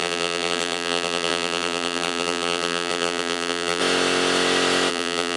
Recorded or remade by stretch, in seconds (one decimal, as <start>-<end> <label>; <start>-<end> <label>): 0.0-3.8 remade; 3.8-4.9 recorded; 4.9-5.4 remade